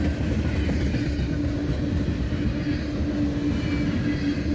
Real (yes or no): yes